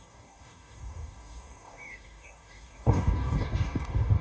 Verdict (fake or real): fake